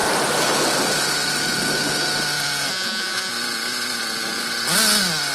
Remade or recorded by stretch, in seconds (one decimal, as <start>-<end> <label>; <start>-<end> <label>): 0.0-2.7 recorded; 2.7-3.3 remade; 3.3-5.3 recorded